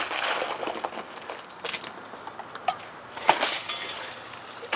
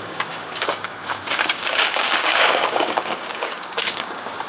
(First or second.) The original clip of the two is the first